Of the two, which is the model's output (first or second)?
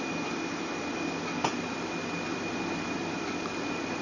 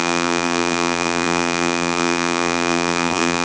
second